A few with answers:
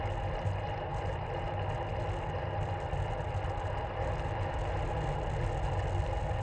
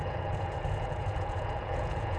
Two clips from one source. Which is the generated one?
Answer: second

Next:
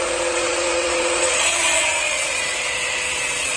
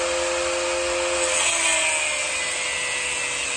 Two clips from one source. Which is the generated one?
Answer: first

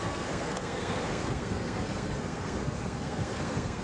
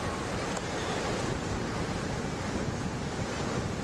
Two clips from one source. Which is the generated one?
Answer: first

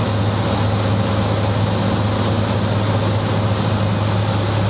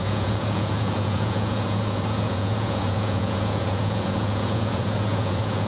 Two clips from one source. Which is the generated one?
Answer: second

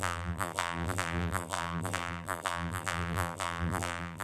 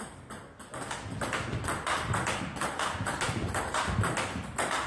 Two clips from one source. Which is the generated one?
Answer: first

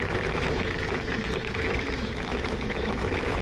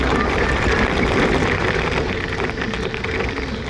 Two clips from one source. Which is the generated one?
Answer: first